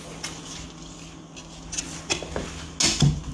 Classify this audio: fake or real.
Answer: real